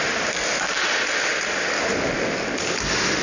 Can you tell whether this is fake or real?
real